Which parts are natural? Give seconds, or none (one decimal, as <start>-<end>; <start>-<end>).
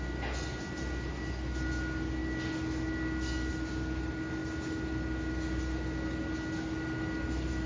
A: 0.0-7.7